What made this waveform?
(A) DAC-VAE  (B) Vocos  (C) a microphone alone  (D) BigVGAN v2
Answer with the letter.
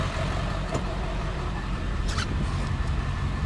D